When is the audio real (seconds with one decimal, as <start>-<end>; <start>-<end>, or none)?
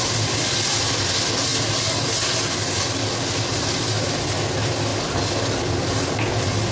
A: 0.0-6.7